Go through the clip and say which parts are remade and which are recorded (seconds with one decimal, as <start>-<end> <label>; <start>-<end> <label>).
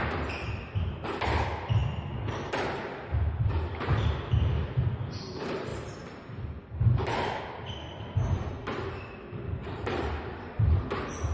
0.0-1.8 recorded; 1.8-4.1 remade; 4.1-9.6 recorded; 9.6-10.5 remade; 10.5-11.3 recorded